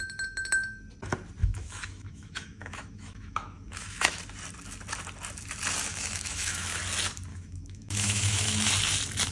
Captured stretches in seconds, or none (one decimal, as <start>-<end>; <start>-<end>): 0.0-1.4; 4.2-5.9; 6.8-7.3; 8.7-9.3

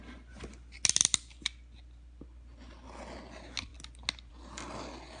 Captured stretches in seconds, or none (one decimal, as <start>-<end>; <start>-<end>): 0.0-5.2

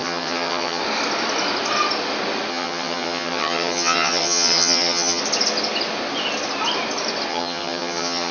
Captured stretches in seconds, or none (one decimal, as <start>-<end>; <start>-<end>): 0.8-2.5; 5.2-7.3

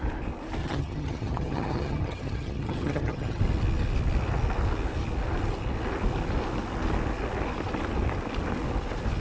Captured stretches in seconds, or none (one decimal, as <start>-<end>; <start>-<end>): 0.0-0.6; 3.4-9.2

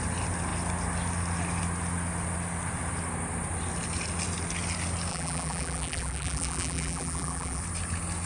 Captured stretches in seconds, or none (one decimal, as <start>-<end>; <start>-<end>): 0.0-5.1; 7.6-8.3

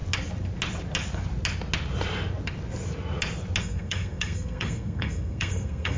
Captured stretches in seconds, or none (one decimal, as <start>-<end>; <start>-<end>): 0.0-3.6